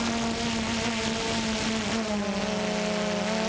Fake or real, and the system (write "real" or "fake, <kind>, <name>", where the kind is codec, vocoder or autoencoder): real